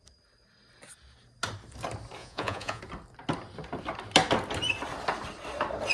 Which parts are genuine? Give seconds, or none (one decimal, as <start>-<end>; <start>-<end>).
0.0-2.2; 2.8-5.9